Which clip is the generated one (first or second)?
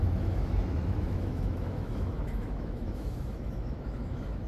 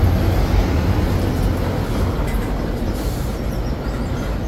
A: first